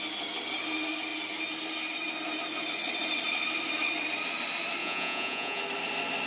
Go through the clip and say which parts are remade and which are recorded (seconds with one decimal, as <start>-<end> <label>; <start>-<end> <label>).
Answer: 0.0-4.8 recorded; 4.8-5.6 remade; 5.6-6.3 recorded